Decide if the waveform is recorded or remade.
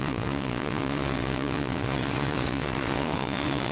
remade